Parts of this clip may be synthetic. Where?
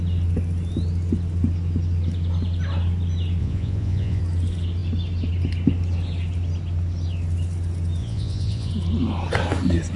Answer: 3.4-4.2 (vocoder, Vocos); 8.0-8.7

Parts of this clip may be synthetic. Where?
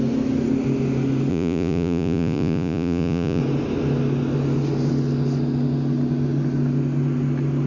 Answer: 1.3-3.4 (vocoder, Vocos)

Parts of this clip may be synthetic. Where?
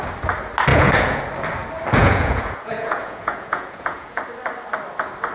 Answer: 0.7-1.2 (vocoder, Vocos); 2.0-4.2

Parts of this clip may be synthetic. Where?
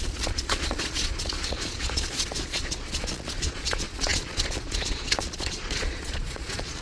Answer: 0.0-6.8 (vocoder, Vocos)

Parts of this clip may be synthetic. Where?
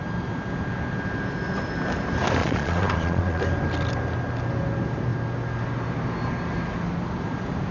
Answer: 2.4-3.4 (vocoder, Vocos)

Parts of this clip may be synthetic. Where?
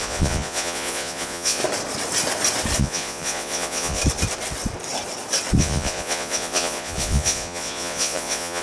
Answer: 0.0-1.6 (vocoder, Vocos); 2.8-4.0; 5.6-8.6